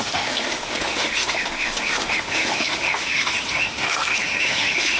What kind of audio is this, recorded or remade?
remade